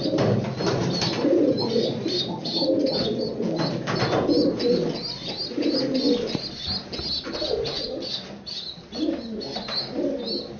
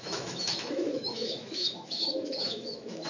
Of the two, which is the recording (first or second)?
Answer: first